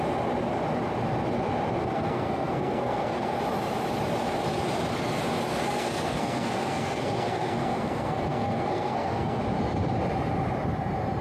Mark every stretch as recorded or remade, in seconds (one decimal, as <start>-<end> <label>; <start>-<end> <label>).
0.0-1.8 recorded; 1.8-3.4 remade; 3.4-5.5 recorded; 5.5-9.4 remade; 9.4-11.2 recorded